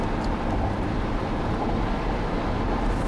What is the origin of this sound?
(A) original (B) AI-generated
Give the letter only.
A